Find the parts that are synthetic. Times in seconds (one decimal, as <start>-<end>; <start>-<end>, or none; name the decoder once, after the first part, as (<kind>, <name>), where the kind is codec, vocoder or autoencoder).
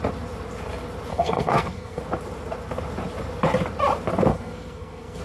1.1-2.0 (codec, SNAC); 4.3-5.2